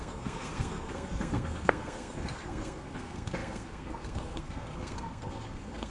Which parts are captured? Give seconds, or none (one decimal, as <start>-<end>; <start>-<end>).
none